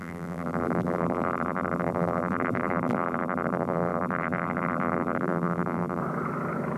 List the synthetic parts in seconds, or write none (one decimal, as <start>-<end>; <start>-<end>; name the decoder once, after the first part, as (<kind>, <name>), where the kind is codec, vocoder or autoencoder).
0.0-6.0 (vocoder, BigVGAN v2)